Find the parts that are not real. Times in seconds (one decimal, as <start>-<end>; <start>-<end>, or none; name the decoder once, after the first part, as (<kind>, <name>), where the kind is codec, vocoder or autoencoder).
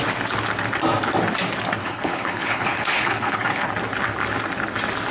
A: 1.8-3.7 (codec, HILCodec)